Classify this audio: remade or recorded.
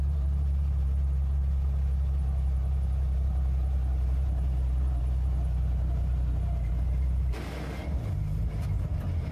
remade